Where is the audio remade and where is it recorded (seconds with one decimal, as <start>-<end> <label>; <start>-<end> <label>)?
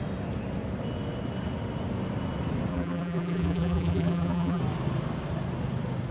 0.0-2.7 recorded; 2.7-4.6 remade; 4.6-6.1 recorded